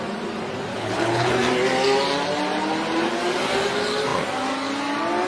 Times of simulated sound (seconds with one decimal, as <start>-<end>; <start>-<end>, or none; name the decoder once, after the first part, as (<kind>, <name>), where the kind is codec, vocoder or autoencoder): 0.7-1.3 (codec, HILCodec)